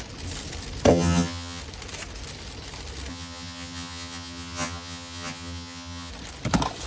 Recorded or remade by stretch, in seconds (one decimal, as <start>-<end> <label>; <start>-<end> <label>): 0.0-0.9 recorded; 0.9-1.6 remade; 1.6-3.1 recorded; 3.1-6.1 remade; 6.1-6.9 recorded